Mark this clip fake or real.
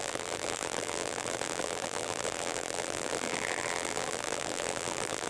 fake